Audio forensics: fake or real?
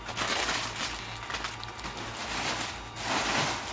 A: real